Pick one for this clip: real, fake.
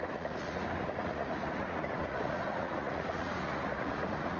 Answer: fake